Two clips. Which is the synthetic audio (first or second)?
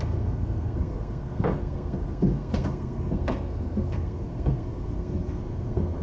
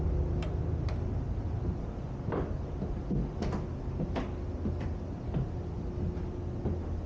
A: first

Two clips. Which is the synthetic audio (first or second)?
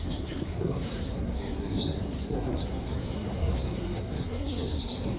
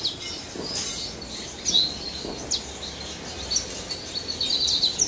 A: first